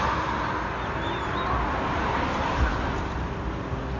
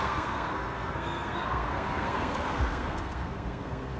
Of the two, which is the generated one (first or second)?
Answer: second